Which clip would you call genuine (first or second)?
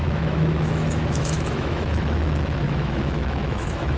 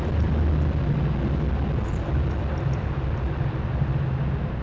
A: second